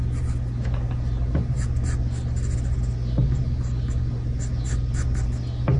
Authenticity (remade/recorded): recorded